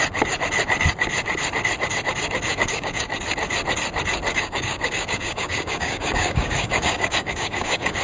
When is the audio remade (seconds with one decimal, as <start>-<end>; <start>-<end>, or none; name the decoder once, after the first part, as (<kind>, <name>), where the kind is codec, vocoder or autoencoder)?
2.5-3.1 (codec, DAC); 4.3-8.0